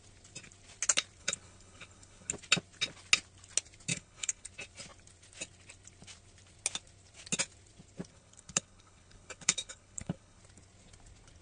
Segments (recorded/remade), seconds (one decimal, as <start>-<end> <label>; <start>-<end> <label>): 0.0-1.2 recorded; 1.2-2.3 remade; 2.3-3.9 recorded; 3.9-4.5 remade; 4.5-8.1 recorded; 8.1-10.4 remade; 10.4-11.4 recorded